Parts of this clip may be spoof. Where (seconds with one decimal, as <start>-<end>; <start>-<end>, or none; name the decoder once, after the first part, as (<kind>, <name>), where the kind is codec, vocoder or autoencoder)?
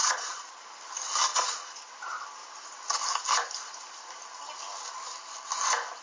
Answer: 0.0-0.7 (vocoder, Vocos); 1.3-1.9